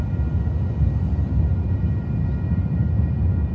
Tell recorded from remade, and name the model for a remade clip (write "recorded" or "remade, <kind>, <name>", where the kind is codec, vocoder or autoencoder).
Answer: recorded